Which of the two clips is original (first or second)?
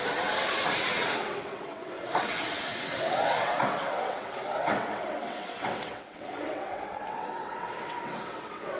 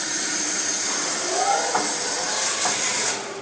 second